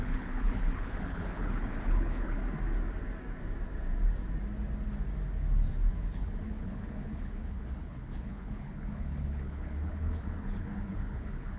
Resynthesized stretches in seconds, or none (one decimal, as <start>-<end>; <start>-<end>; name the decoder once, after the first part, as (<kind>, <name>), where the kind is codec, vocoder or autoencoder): 0.0-2.4 (codec, HILCodec); 5.9-11.6